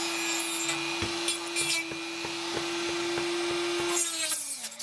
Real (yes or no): yes